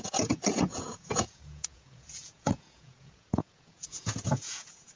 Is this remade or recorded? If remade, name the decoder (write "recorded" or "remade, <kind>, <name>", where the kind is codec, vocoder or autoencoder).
remade, vocoder, Vocos